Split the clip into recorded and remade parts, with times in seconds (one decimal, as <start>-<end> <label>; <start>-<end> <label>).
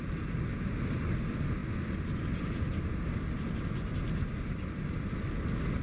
0.0-5.8 recorded